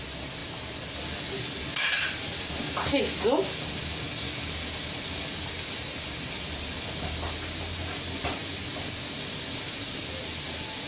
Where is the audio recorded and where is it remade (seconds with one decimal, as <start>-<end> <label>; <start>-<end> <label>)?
0.0-10.9 recorded